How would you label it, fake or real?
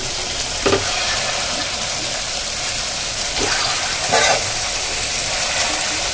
real